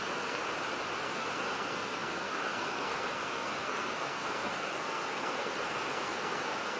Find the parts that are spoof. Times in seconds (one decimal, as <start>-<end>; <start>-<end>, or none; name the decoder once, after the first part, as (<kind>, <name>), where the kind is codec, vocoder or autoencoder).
0.0-0.4 (codec, SNAC); 1.0-6.8